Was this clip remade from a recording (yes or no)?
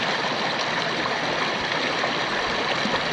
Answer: no